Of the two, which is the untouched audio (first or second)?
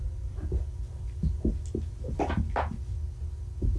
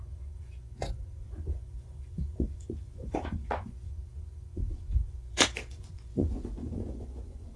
first